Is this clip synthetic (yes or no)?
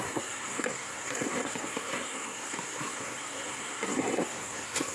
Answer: yes